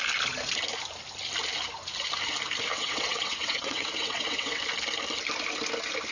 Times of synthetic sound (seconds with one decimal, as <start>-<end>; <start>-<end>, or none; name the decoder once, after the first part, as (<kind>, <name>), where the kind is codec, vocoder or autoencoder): 2.7-4.6 (vocoder, WaveNeXt)